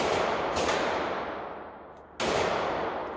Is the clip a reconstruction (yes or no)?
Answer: no